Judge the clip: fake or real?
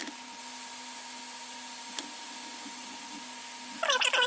real